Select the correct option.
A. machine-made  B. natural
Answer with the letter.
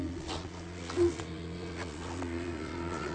A